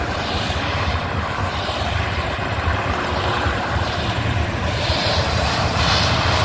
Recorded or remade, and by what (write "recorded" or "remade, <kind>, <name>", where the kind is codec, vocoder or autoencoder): remade, vocoder, BigVGAN v2